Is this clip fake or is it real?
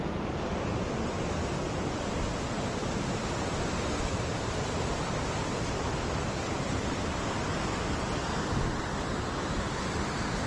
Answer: real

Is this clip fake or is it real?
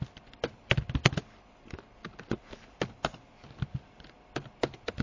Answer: real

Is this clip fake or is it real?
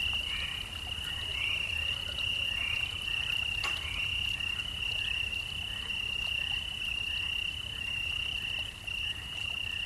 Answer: real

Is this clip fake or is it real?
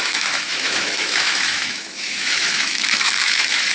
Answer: fake